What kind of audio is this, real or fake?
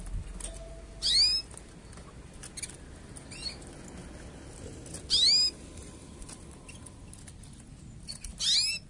real